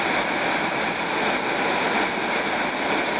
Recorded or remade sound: recorded